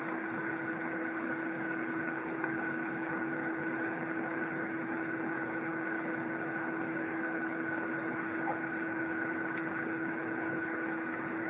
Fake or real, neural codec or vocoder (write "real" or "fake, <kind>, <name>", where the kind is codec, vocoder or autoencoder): fake, codec, HILCodec